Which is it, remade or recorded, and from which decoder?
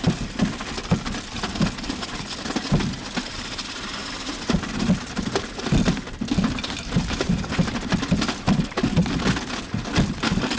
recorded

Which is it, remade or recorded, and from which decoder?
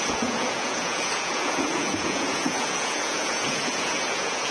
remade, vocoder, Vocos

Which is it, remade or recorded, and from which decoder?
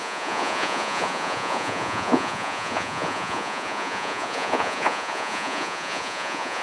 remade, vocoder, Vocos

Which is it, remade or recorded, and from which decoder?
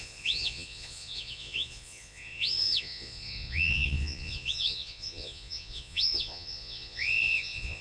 remade, vocoder, Vocos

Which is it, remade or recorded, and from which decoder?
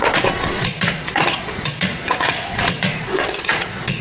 remade, vocoder, Vocos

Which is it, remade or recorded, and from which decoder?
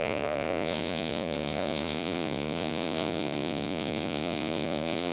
remade, vocoder, Vocos